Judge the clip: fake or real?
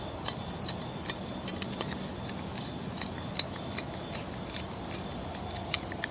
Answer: real